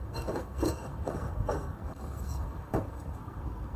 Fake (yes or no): yes